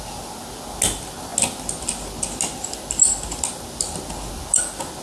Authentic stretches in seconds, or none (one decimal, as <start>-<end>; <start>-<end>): 0.0-5.0